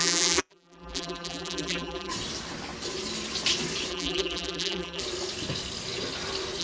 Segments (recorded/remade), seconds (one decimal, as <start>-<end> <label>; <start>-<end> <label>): 0.0-2.1 remade; 2.1-3.9 recorded; 3.9-5.0 remade; 5.0-6.6 recorded